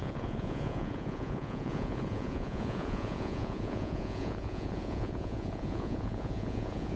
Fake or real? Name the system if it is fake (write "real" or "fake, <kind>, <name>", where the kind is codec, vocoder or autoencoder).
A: fake, vocoder, Vocos